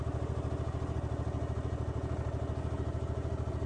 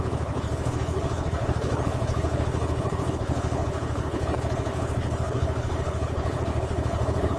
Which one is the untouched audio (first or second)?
first